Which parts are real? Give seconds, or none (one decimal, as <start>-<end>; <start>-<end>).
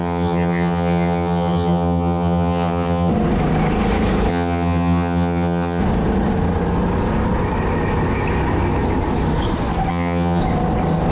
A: 3.1-4.3; 5.8-9.9; 10.4-11.1